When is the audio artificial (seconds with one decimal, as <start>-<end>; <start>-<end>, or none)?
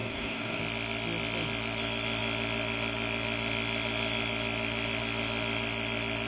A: 0.0-0.6